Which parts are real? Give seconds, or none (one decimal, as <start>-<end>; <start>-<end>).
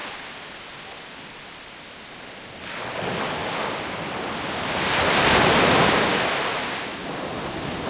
0.0-7.9